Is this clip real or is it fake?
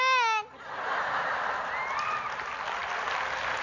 real